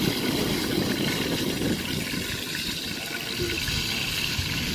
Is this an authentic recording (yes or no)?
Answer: yes